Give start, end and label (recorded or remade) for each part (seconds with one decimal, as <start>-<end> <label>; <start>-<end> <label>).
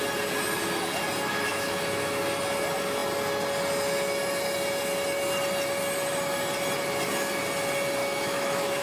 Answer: 0.0-1.5 recorded; 1.5-2.2 remade; 2.2-8.0 recorded; 8.0-8.8 remade